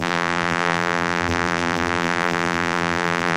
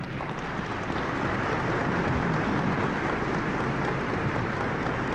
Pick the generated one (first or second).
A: first